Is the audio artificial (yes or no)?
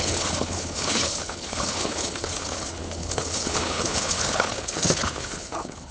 yes